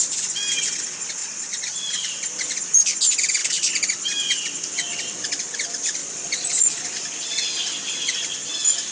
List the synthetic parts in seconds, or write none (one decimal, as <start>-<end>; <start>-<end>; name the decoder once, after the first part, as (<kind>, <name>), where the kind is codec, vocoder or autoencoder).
1.2-2.1 (vocoder, Vocos); 6.0-6.8